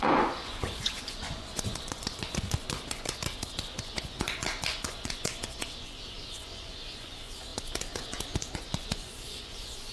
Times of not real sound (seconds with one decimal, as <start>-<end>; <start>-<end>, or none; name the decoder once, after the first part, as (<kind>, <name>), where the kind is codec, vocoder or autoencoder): 0.0-9.9 (vocoder, Vocos)